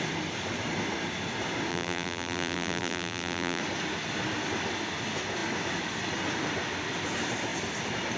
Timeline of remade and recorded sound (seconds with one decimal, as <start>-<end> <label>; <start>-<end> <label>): 0.0-1.7 recorded; 1.7-3.6 remade; 3.6-8.2 recorded